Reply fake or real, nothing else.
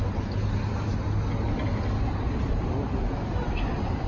real